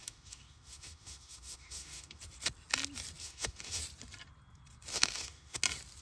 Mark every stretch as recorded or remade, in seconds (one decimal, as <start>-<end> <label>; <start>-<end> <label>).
0.0-2.2 remade; 2.2-3.2 recorded; 3.2-3.8 remade; 3.8-4.9 recorded; 4.9-5.6 remade; 5.6-6.0 recorded